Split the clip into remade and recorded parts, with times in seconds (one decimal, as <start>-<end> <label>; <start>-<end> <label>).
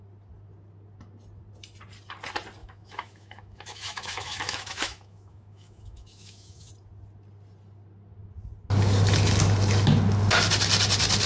0.0-2.6 recorded; 2.6-6.7 remade; 6.7-11.3 recorded